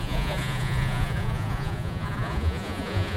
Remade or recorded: remade